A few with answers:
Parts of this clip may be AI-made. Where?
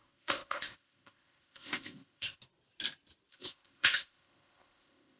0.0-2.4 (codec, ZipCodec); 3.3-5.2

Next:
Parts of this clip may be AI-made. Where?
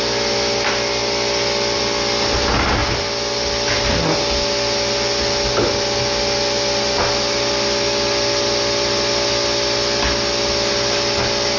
none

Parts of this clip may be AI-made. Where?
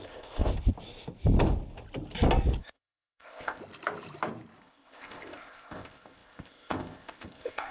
0.0-0.5 (codec, ZipCodec); 2.6-3.6; 4.6-7.7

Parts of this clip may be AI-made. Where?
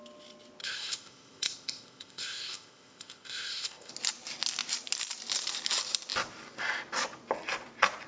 0.6-3.9 (codec, ZipCodec)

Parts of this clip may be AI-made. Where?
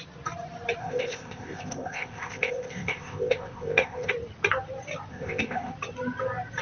0.8-4.1 (codec, ZipCodec); 5.1-5.7